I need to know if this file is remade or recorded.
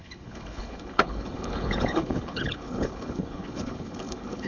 remade